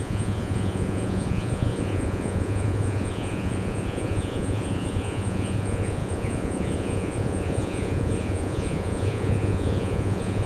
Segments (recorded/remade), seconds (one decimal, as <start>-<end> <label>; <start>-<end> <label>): 0.0-10.5 remade